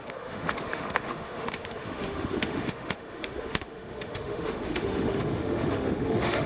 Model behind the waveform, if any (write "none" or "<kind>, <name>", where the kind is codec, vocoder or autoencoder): autoencoder, DAC-VAE